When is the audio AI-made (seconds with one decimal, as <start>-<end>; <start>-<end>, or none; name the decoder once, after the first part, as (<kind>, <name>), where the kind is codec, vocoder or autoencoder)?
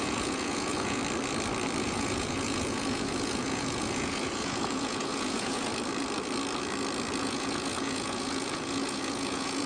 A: 0.0-1.0 (vocoder, Vocos); 1.8-5.7; 7.2-9.7